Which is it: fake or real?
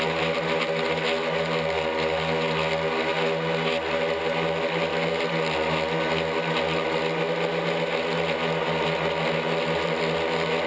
real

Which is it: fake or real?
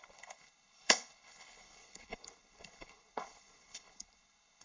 fake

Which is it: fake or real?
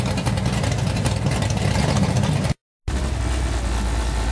real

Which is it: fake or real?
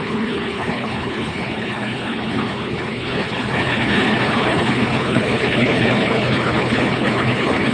fake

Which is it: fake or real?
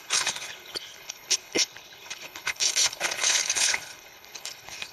fake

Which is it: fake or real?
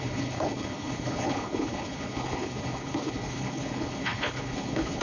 fake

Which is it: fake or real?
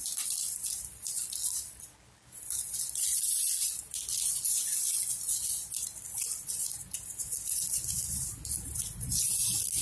real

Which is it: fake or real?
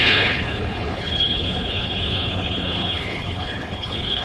fake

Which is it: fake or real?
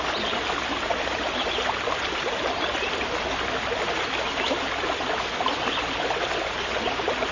real